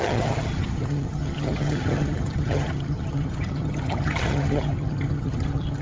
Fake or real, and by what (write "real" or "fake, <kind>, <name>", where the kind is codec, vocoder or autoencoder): fake, vocoder, HiFi-GAN